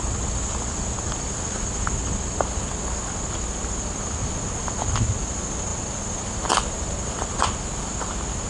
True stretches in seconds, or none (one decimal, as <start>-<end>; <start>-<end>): 0.0-8.5